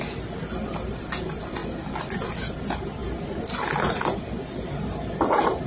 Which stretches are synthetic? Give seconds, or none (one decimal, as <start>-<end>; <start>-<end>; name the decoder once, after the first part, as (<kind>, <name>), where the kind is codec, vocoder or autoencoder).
none